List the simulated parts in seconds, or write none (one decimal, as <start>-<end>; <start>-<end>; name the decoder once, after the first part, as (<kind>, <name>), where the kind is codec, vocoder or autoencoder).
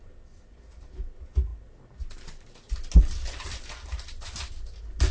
none